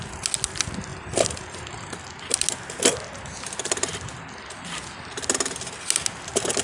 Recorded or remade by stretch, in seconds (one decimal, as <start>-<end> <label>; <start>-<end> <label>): 0.0-6.6 recorded